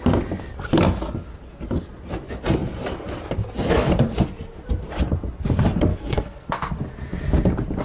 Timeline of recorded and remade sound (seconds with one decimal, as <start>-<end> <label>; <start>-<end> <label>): 0.0-5.9 recorded; 5.9-6.7 remade; 6.7-7.8 recorded